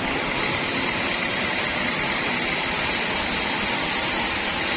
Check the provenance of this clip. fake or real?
real